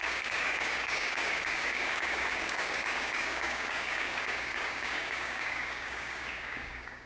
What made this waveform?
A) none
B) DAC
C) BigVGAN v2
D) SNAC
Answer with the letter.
B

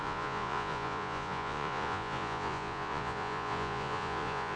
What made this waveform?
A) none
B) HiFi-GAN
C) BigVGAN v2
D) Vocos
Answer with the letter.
D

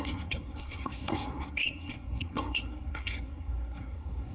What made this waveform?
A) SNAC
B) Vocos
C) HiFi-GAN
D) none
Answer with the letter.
A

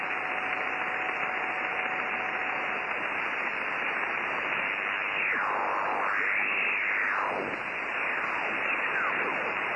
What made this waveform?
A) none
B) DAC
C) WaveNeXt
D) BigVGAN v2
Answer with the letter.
A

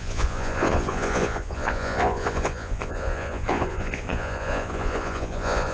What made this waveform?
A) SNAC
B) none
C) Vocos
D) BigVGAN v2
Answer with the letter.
C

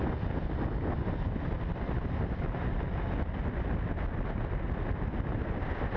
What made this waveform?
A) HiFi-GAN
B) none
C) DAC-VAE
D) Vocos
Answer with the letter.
B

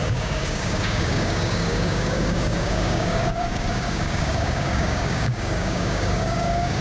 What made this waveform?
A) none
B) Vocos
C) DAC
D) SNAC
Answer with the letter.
C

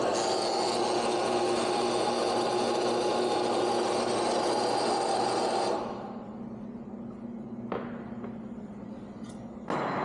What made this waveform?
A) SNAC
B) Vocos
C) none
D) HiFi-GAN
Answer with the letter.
C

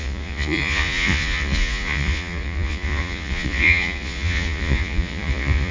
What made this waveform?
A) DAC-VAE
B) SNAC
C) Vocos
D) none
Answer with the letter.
C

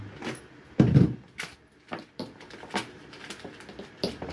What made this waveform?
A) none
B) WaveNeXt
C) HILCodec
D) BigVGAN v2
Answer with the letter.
A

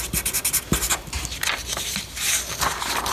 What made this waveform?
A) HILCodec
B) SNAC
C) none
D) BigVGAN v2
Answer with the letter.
C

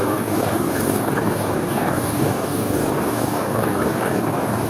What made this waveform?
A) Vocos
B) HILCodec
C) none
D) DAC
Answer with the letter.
D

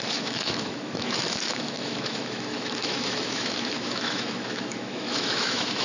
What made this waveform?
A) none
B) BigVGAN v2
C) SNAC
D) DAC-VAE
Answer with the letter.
D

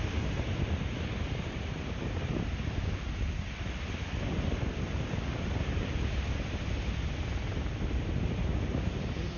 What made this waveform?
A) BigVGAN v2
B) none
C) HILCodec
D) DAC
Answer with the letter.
B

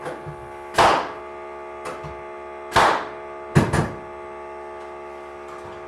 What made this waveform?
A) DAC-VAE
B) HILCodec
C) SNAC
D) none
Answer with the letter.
D